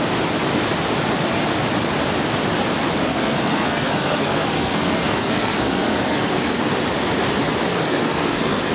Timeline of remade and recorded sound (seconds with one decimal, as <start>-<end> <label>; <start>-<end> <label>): 0.0-3.0 recorded; 3.0-6.6 remade; 6.6-7.7 recorded; 7.7-8.7 remade